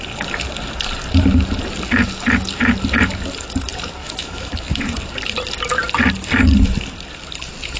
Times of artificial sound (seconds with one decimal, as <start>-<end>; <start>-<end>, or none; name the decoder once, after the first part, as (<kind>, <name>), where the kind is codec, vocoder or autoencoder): 4.0-4.8 (autoencoder, DAC-VAE)